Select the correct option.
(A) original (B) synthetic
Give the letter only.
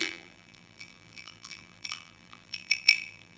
B